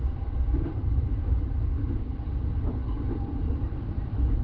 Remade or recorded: recorded